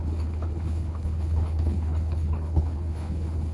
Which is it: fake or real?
fake